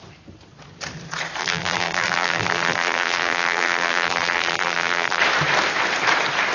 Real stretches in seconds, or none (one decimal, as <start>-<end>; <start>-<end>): 0.0-1.4; 5.2-6.5